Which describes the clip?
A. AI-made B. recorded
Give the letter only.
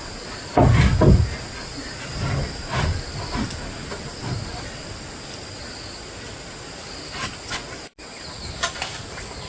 B